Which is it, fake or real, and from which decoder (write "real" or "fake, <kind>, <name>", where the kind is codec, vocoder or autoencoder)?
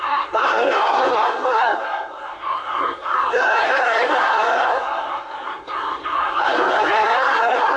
fake, codec, SNAC